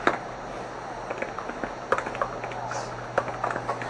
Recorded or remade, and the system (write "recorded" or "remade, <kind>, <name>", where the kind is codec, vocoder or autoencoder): recorded